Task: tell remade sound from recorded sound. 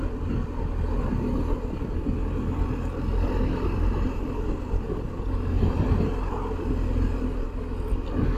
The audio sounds recorded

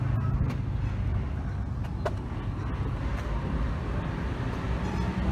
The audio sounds recorded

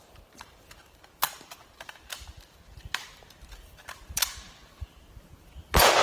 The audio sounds remade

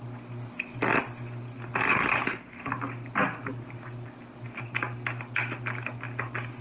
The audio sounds recorded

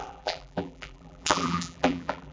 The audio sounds remade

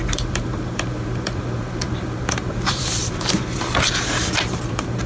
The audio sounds remade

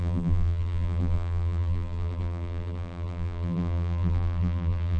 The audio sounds remade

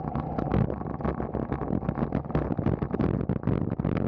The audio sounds recorded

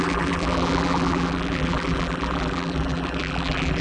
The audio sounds remade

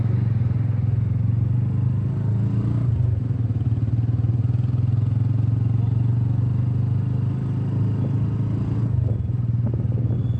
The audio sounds recorded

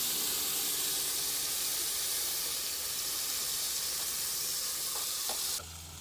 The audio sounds recorded